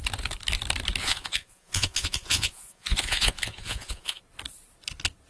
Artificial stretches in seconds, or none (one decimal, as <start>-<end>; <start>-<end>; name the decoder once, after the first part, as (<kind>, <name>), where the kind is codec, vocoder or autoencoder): 1.0-4.2 (vocoder, Vocos)